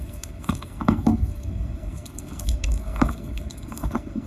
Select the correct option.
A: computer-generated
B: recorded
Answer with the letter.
A